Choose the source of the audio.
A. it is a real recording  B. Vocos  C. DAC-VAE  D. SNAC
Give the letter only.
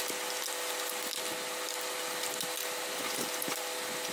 A